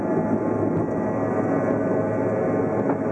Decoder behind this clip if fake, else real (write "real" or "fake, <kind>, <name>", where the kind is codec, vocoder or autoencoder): real